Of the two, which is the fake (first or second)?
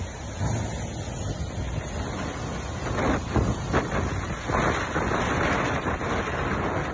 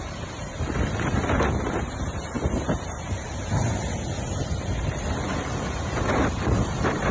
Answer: second